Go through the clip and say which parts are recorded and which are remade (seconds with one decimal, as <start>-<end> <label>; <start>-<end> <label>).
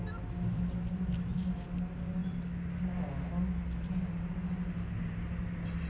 0.0-5.9 recorded